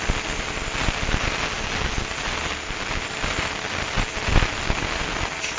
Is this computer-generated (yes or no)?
no